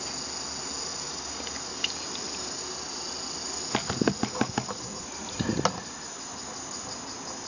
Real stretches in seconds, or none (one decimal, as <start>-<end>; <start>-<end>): 0.0-7.5